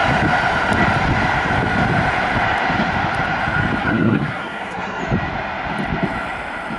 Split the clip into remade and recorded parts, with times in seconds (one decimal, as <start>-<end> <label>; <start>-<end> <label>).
0.0-3.8 recorded; 3.8-5.0 remade; 5.0-6.8 recorded

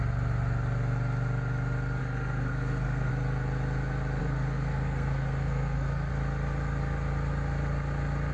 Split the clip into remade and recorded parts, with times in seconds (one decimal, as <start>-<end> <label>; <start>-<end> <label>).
0.0-2.0 recorded; 2.0-3.1 remade; 3.1-4.2 recorded; 4.2-6.1 remade; 6.1-8.3 recorded

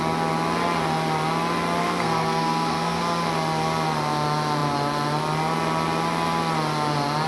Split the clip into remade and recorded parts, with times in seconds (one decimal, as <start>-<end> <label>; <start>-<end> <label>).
0.0-1.8 recorded; 1.8-3.0 remade; 3.0-7.3 recorded

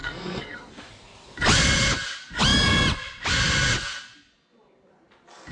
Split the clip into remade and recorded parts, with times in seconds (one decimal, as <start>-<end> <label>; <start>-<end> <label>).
0.0-0.9 remade; 0.9-5.5 recorded

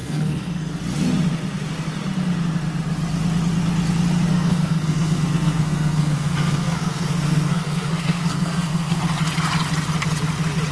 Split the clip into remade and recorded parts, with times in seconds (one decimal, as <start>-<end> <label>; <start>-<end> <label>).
0.0-0.7 remade; 0.7-4.3 recorded; 4.3-9.0 remade; 9.0-10.7 recorded

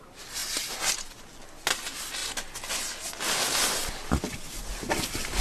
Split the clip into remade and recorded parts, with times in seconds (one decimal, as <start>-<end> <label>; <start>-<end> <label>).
0.0-5.4 recorded

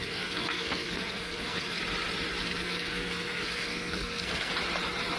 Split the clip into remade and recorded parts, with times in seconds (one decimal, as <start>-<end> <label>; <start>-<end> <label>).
0.0-1.8 remade; 1.8-2.4 recorded; 2.4-4.5 remade; 4.5-5.2 recorded